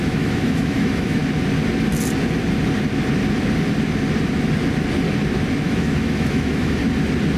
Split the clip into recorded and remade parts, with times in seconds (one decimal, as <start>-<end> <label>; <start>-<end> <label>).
0.0-1.2 remade; 1.2-5.6 recorded; 5.6-6.8 remade; 6.8-7.4 recorded